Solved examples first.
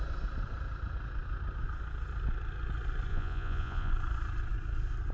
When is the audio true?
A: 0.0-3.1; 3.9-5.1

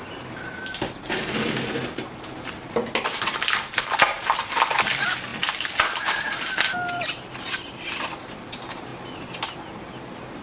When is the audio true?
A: 0.0-10.4

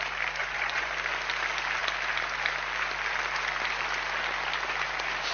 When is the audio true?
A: 0.0-0.4; 0.9-5.3

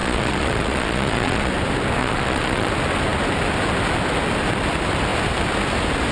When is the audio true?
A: 1.5-2.0; 2.7-6.1

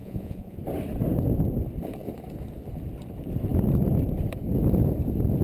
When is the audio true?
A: 0.6-5.4

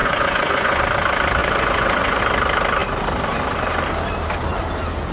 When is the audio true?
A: 0.8-1.4; 2.2-5.1

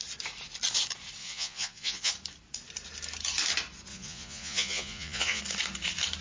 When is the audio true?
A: 0.0-1.2; 2.1-3.9; 5.4-6.2

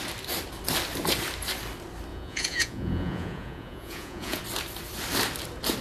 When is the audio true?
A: 0.0-2.1; 4.4-5.8